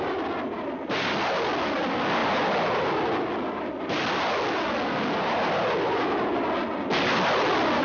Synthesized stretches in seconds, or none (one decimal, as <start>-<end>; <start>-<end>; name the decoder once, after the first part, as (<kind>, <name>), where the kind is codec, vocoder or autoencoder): none